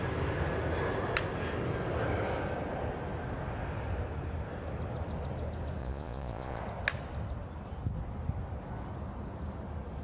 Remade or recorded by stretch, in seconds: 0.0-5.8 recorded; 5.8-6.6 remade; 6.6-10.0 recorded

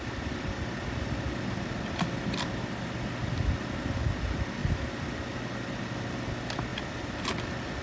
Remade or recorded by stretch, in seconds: 0.0-7.8 recorded

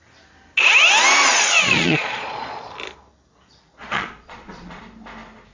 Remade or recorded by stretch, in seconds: 0.0-1.3 recorded; 1.3-2.4 remade; 2.4-3.8 recorded; 3.8-4.8 remade; 4.8-5.5 recorded

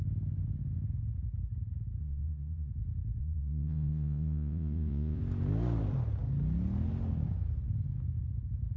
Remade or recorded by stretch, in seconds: 0.0-2.0 recorded; 2.0-2.7 remade; 2.7-3.2 recorded; 3.2-5.2 remade; 5.2-8.8 recorded

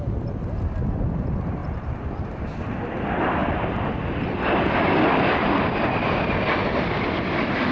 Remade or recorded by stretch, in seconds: 0.0-7.7 recorded